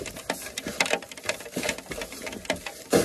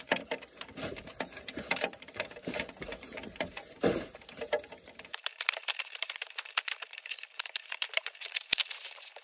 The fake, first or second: second